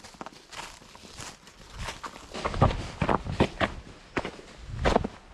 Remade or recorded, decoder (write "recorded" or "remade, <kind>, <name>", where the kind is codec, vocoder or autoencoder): recorded